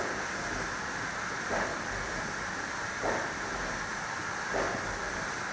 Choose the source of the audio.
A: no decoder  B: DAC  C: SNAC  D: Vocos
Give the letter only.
A